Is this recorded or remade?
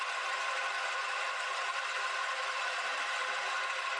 remade